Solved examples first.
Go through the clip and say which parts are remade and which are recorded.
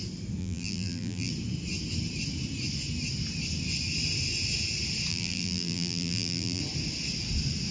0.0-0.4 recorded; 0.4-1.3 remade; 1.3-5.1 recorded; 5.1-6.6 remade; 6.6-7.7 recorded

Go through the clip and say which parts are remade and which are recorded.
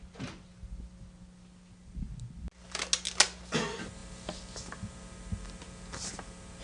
0.0-6.6 recorded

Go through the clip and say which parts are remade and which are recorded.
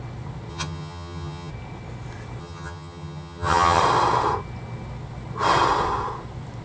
0.0-0.5 recorded; 0.5-1.5 remade; 1.5-2.4 recorded; 2.4-3.8 remade; 3.8-6.6 recorded